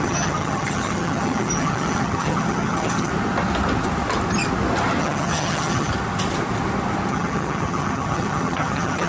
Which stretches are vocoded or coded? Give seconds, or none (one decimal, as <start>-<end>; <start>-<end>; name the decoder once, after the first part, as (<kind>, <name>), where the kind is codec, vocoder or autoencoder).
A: 0.0-3.1 (vocoder, HiFi-GAN); 5.0-5.9; 7.1-9.1